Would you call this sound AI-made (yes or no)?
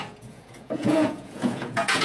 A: yes